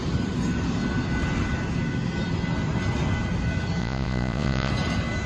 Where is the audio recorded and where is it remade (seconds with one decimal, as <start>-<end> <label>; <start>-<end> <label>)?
0.0-3.8 recorded; 3.8-4.7 remade; 4.7-5.3 recorded